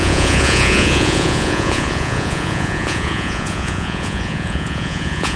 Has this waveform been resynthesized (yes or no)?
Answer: yes